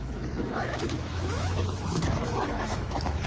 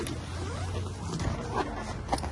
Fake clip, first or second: first